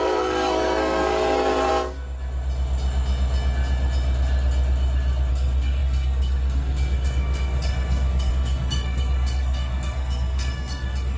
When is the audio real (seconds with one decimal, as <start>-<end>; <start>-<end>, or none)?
1.7-5.3